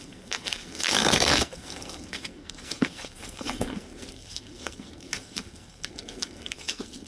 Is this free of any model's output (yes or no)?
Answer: no